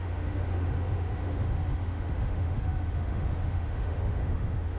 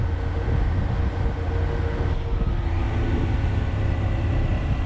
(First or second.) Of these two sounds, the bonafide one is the second